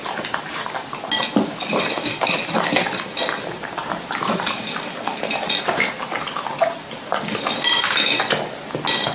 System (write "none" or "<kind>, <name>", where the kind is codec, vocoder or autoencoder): none